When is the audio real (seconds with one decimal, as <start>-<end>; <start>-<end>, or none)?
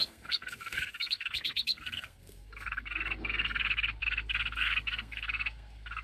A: none